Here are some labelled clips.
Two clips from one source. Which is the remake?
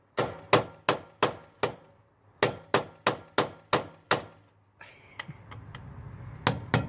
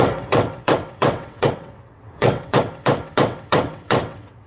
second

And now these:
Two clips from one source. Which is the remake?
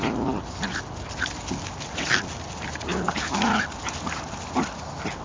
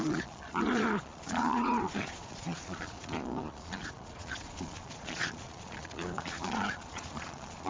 second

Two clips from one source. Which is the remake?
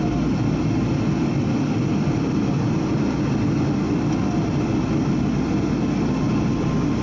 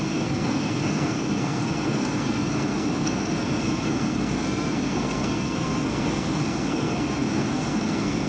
second